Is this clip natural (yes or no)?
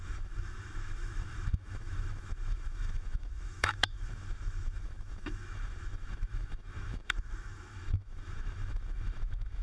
no